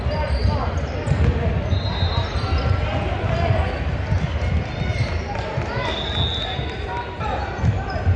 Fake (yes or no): no